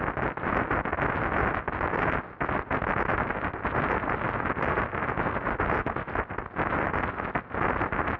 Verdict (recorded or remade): recorded